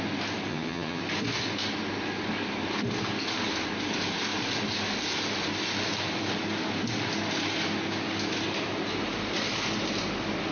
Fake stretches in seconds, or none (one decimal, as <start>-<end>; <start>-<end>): 0.5-1.0

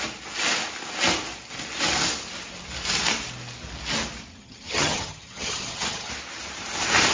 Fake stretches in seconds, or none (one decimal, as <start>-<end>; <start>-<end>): 4.3-6.1